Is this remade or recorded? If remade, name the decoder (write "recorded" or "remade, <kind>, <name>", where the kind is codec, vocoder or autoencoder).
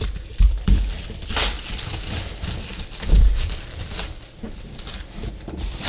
remade, vocoder, BigVGAN v2